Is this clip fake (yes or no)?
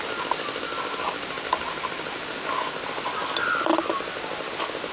no